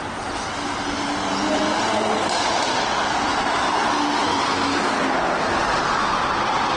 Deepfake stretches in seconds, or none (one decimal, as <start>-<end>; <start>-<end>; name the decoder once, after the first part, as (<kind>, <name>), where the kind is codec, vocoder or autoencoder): none